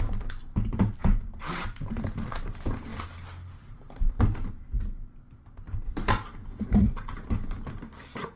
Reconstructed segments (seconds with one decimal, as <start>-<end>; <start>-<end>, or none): none